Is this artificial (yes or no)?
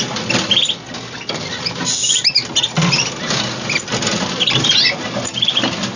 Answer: no